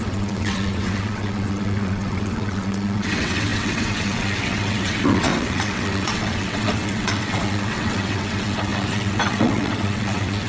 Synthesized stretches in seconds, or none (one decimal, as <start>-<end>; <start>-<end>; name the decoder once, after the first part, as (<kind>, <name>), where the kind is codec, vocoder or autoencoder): 0.0-10.5 (vocoder, WaveNeXt)